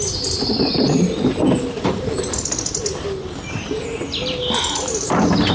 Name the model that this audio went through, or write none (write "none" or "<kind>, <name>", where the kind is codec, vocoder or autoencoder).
none